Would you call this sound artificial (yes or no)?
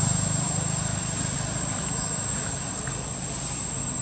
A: no